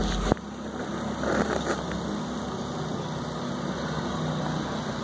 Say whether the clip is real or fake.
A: real